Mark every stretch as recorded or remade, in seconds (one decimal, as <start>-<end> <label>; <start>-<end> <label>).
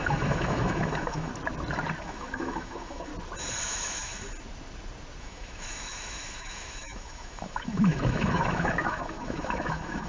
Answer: 0.0-1.3 remade; 1.3-2.0 recorded; 2.0-3.1 remade; 3.1-3.6 recorded; 3.6-4.1 remade; 4.1-5.2 recorded; 5.2-10.1 remade